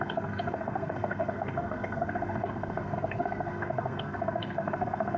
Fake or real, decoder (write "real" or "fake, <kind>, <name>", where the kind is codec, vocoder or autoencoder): fake, codec, SNAC